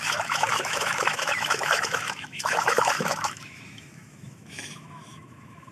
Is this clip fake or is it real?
fake